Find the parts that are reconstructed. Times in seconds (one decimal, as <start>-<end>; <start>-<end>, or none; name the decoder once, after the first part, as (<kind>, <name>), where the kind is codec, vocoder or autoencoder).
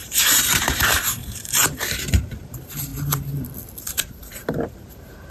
0.0-2.9 (vocoder, BigVGAN v2); 3.8-5.3